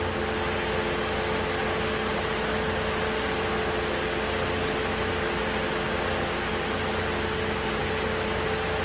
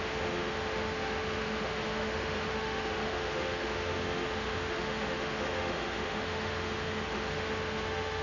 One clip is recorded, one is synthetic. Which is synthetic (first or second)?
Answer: second